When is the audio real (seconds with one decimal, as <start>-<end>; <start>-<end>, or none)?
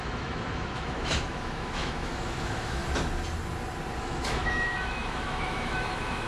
2.8-4.0